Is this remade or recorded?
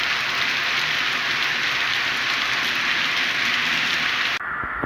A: recorded